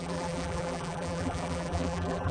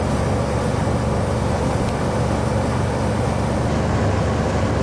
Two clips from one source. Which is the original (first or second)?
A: second